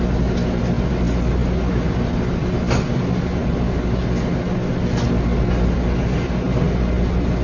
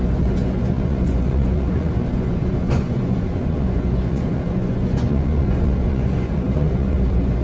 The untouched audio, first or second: first